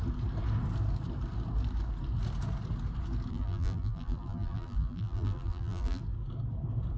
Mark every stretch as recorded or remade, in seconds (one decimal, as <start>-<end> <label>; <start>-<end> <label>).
0.0-3.3 recorded; 3.3-6.0 remade; 6.0-7.0 recorded